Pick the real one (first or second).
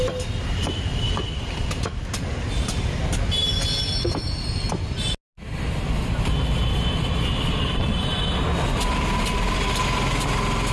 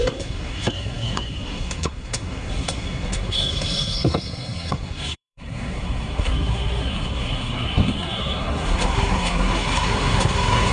first